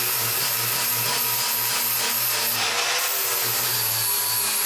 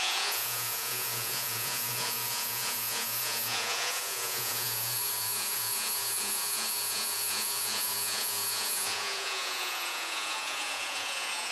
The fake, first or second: second